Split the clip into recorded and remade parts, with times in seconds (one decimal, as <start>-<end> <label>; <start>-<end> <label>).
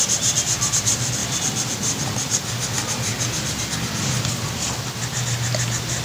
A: 0.0-1.2 recorded; 1.2-4.8 remade; 4.8-6.0 recorded